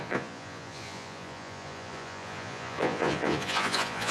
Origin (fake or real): fake